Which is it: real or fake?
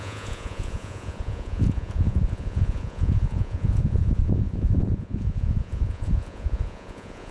fake